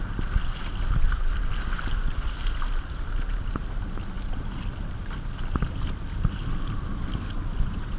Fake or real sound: real